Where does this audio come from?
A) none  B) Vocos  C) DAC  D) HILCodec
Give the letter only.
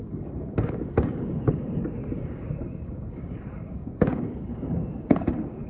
C